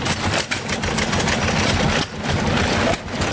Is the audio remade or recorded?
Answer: recorded